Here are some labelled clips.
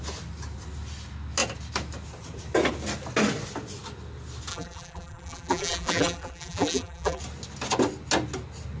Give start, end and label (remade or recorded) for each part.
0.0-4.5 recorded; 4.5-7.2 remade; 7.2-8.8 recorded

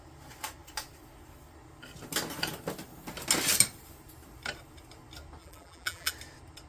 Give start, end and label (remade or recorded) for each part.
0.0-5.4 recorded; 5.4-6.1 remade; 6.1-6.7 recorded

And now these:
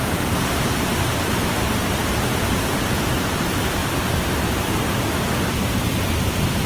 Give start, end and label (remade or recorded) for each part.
0.0-3.8 remade; 3.8-6.2 recorded; 6.2-6.7 remade

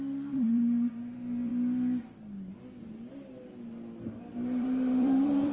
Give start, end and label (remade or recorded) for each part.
0.0-1.5 remade; 1.5-4.2 recorded; 4.2-5.5 remade

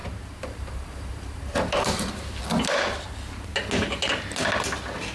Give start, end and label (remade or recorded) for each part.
0.0-2.4 remade; 2.4-5.1 recorded